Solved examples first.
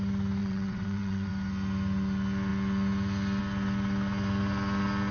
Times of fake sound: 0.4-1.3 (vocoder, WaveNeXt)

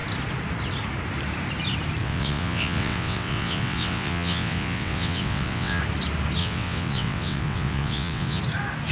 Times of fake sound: 2.0-5.8 (vocoder, WaveNeXt); 6.4-8.4

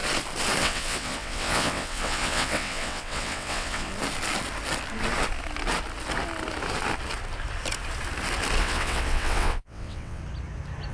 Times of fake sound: 0.6-3.9 (vocoder, WaveNeXt); 8.6-10.2

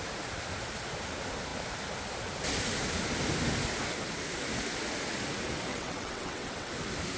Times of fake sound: 5.7-6.7 (vocoder, WaveNeXt)

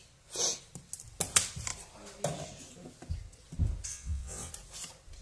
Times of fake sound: 3.9-4.5 (vocoder, WaveNeXt)